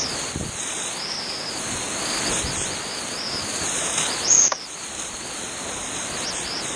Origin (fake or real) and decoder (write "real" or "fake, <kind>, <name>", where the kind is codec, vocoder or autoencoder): real